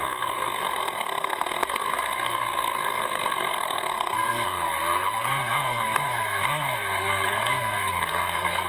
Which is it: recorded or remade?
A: remade